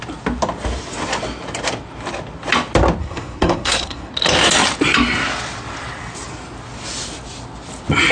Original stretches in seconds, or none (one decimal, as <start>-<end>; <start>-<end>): 0.0-3.0; 4.1-8.1